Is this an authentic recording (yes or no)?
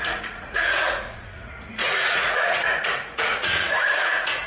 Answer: no